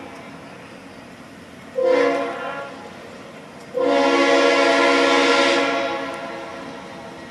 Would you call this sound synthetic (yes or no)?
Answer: no